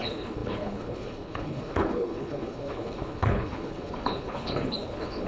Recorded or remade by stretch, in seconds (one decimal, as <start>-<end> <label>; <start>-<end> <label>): 0.0-5.3 remade